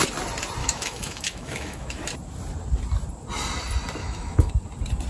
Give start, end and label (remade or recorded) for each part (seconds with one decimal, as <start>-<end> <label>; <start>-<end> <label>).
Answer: 0.0-0.6 recorded; 0.6-2.0 remade; 2.0-4.0 recorded; 4.0-4.5 remade; 4.5-5.1 recorded